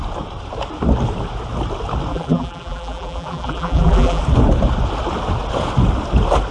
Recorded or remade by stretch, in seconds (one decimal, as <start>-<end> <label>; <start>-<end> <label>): 0.0-2.1 recorded; 2.1-4.2 remade; 4.2-6.5 recorded